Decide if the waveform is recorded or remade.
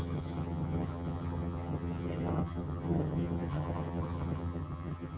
remade